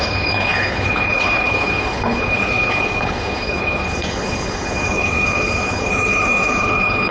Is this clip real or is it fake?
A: fake